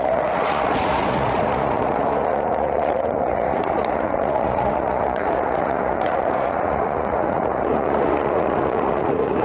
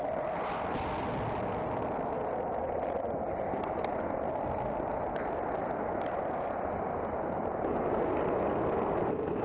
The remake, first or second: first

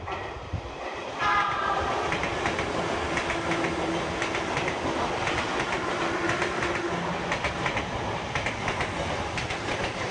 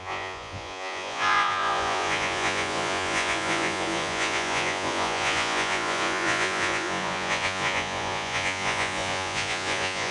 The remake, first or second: second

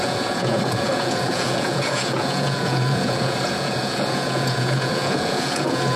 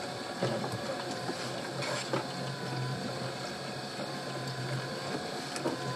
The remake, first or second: first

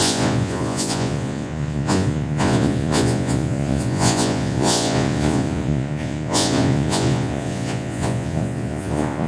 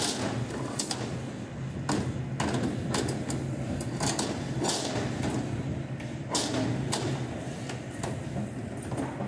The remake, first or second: first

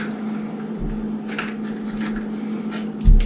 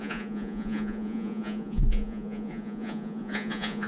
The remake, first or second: second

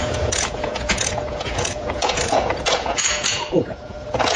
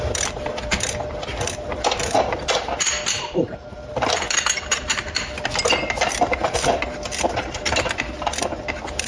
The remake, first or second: first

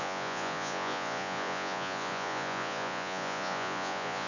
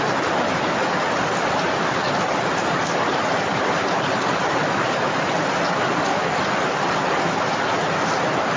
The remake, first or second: first